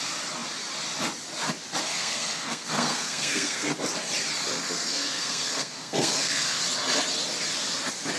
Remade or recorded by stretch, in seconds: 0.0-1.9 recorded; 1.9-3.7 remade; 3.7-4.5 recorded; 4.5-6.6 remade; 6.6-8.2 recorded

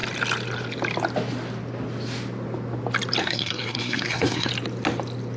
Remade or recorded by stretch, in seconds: 0.0-3.2 recorded; 3.2-4.5 remade; 4.5-5.4 recorded

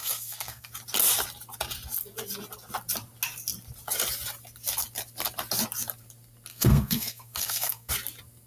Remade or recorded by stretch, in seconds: 0.0-0.7 remade; 0.7-6.5 recorded; 6.5-7.9 remade; 7.9-8.5 recorded

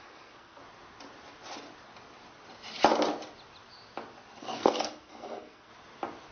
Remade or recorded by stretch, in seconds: 0.0-0.6 remade; 0.6-4.4 recorded; 4.4-5.7 remade; 5.7-6.3 recorded

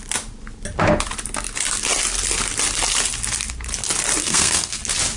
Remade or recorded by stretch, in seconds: 0.0-4.2 recorded; 4.2-4.8 remade; 4.8-5.2 recorded